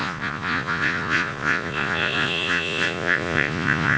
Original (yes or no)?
no